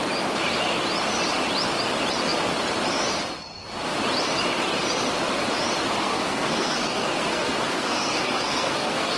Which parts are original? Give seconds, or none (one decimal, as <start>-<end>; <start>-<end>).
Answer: 0.0-6.0